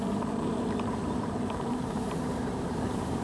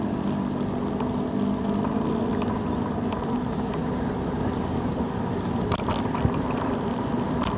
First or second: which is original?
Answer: second